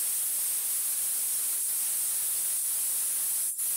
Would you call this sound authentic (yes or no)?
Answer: yes